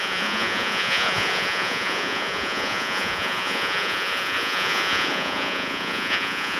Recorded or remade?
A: remade